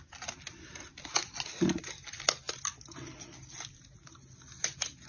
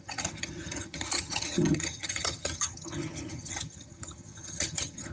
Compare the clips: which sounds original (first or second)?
first